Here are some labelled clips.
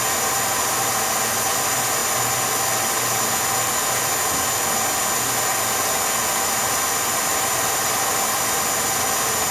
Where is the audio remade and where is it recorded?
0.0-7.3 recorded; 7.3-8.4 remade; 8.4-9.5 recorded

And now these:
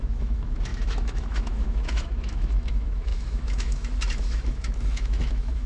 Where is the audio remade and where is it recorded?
0.0-5.7 remade

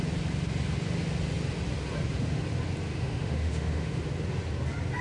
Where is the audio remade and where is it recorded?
0.0-2.9 recorded; 2.9-4.0 remade; 4.0-5.0 recorded

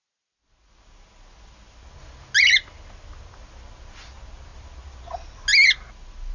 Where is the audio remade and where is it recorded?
0.0-6.3 recorded